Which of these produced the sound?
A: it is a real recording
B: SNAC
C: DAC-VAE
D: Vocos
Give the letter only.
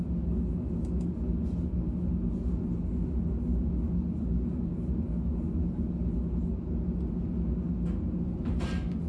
A